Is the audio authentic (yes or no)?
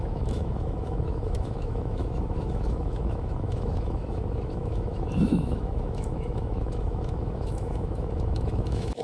no